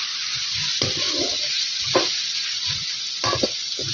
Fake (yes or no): no